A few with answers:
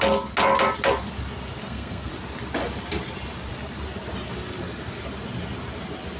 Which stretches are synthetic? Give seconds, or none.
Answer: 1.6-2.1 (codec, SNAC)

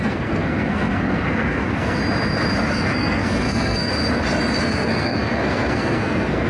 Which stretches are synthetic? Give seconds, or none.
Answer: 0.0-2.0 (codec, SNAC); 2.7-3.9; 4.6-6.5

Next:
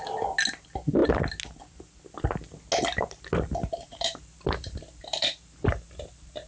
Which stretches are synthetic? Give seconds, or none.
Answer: 3.6-6.5 (vocoder, BigVGAN v2)

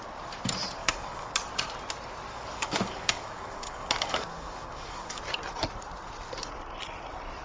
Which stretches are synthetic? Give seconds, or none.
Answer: 0.8-1.3 (codec, DAC); 2.3-5.2